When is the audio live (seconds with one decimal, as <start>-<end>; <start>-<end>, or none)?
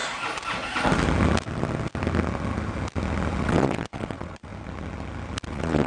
0.0-3.4; 4.5-5.5